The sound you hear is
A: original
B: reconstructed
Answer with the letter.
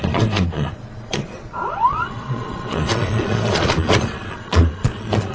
B